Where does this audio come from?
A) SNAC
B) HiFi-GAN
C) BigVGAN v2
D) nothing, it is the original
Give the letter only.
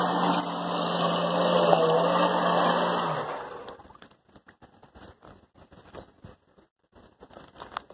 D